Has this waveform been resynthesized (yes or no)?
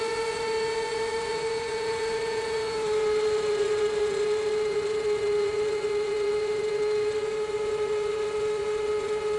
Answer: yes